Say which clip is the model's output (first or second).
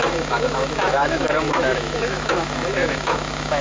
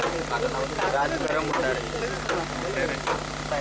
first